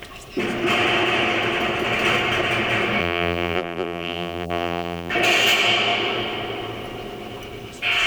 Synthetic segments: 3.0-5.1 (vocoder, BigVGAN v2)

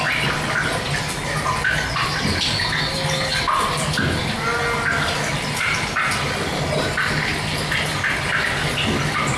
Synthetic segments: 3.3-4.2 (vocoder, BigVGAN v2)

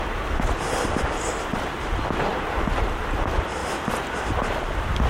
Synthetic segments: 2.3-3.1 (vocoder, BigVGAN v2)

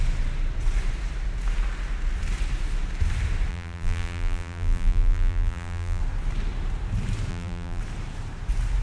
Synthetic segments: 3.5-6.0 (vocoder, BigVGAN v2); 7.3-7.8

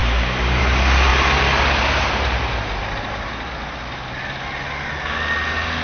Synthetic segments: 0.0-0.6 (vocoder, BigVGAN v2); 1.1-3.5

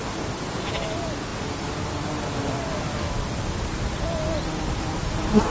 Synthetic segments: none